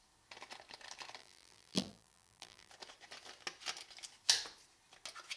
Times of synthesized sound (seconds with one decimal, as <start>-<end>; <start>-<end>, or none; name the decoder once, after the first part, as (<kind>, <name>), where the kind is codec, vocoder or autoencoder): 1.2-2.7 (vocoder, BigVGAN v2)